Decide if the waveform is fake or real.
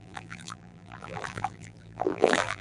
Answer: fake